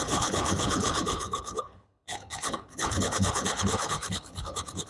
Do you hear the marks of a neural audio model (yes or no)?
yes